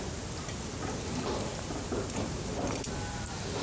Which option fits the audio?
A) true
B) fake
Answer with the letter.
A